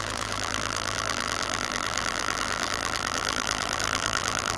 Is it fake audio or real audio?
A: fake